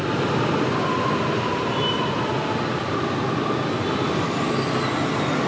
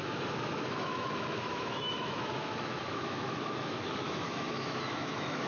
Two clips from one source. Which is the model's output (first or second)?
second